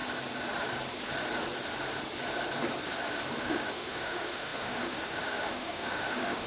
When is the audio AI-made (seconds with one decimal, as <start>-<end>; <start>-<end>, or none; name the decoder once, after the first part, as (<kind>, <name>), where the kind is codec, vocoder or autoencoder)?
3.4-6.5 (autoencoder, DAC-VAE)